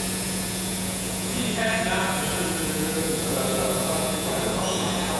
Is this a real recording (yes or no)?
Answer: no